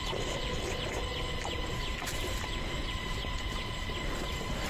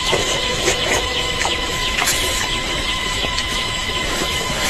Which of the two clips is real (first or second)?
first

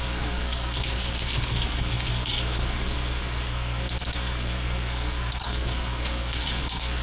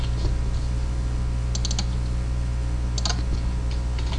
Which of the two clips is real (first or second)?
second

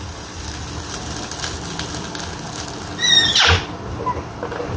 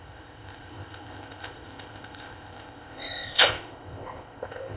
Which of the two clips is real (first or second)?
first